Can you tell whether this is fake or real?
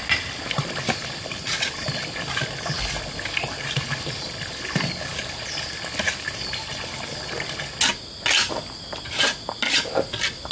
real